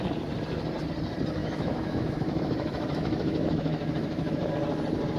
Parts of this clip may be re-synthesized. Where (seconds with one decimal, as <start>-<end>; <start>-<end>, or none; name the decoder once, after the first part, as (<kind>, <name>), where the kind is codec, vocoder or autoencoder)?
1.4-4.5 (autoencoder, DAC-VAE)